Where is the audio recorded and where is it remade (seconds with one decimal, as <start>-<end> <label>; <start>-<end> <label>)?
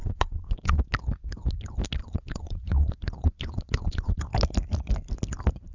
0.0-0.8 remade; 0.8-2.0 recorded; 2.0-4.2 remade; 4.2-5.7 recorded